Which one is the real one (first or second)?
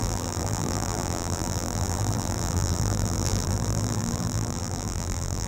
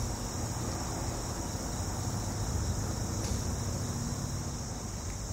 second